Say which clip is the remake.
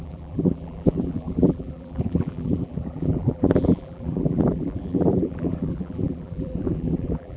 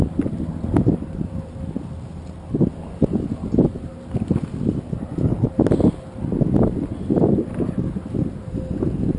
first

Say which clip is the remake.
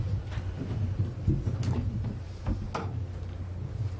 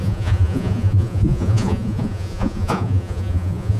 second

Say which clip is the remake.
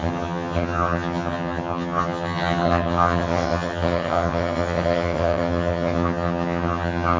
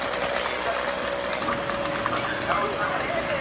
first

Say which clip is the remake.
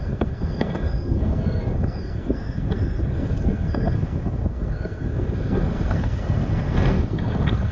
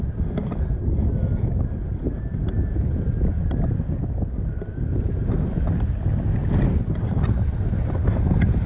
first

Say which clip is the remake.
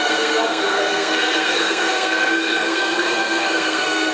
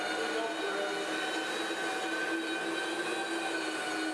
first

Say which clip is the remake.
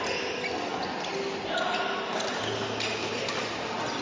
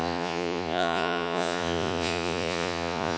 second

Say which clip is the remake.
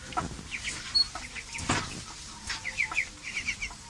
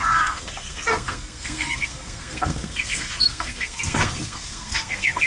second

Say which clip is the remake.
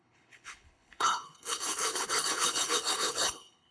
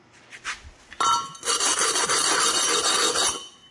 first